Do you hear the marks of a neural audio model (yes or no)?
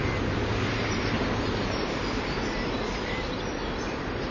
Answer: no